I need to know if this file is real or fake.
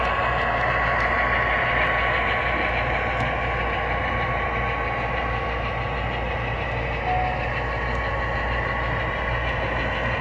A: real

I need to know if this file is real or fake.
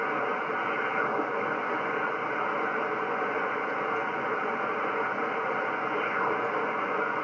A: fake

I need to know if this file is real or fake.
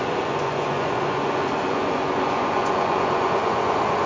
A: fake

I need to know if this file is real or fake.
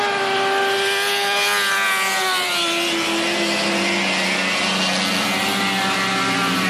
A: real